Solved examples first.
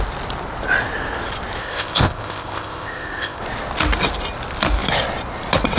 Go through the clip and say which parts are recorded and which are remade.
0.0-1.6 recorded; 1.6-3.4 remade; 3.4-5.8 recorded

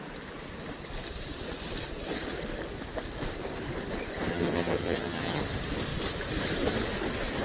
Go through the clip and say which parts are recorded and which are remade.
0.0-4.3 recorded; 4.3-5.4 remade; 5.4-7.4 recorded